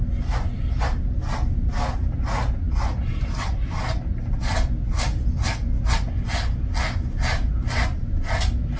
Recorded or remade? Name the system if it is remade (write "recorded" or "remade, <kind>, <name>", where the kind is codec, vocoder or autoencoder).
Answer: recorded